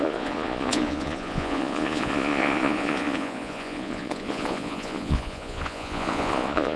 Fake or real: fake